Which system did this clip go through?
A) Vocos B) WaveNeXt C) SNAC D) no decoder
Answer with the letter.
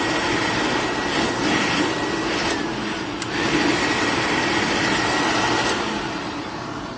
D